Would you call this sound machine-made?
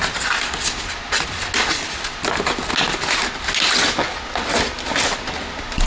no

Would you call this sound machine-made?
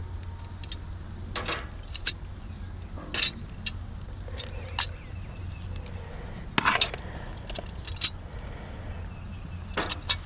no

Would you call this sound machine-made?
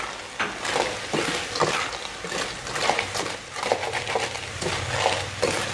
no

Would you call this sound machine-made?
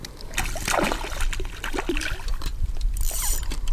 yes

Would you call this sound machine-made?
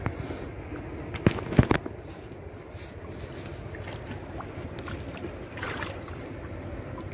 no